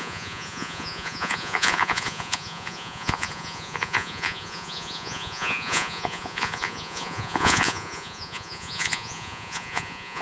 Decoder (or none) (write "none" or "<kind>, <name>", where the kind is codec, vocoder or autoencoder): vocoder, Vocos